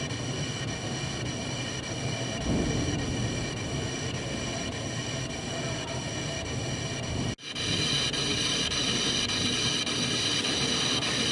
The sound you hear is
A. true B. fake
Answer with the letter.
A